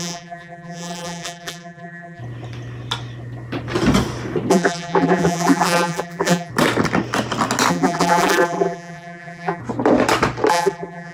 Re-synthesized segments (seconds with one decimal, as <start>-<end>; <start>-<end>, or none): 0.0-2.2; 4.5-6.5; 7.7-9.6; 10.5-11.1